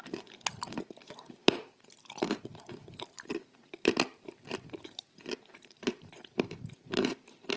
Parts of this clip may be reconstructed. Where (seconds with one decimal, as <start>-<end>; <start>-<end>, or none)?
0.0-7.6